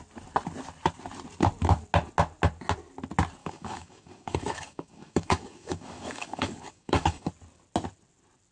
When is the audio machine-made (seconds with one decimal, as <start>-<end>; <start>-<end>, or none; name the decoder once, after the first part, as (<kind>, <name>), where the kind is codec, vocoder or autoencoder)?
3.4-7.3 (codec, DAC)